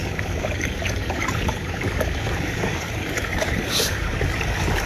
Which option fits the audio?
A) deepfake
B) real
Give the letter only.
A